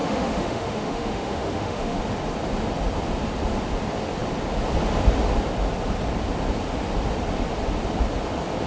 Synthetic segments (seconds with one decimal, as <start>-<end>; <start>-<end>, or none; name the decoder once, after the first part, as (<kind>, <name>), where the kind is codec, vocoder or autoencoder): 0.0-2.0 (autoencoder, DAC-VAE)